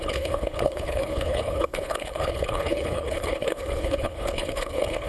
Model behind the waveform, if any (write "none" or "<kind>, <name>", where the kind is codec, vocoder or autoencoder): codec, HILCodec